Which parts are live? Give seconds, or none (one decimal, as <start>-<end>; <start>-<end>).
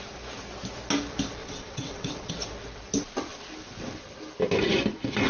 0.0-1.4; 2.3-5.3